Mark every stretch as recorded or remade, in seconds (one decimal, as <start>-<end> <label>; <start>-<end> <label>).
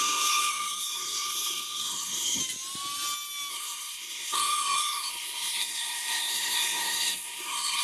0.0-2.4 remade; 2.4-3.5 recorded; 3.5-7.8 remade